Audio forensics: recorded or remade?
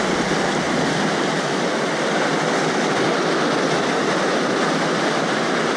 remade